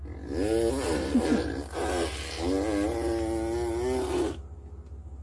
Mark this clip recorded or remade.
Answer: recorded